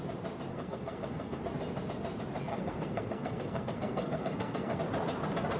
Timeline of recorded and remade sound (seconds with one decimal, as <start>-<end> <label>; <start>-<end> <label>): 0.0-0.5 recorded; 0.5-1.4 remade; 1.4-2.5 recorded; 2.5-4.8 remade; 4.8-5.6 recorded